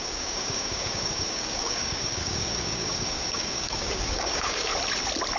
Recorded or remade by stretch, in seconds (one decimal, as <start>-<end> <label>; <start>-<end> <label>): 0.0-4.7 remade; 4.7-5.4 recorded